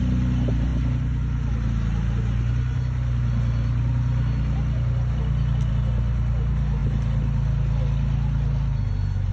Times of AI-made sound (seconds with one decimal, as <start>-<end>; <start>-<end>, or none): none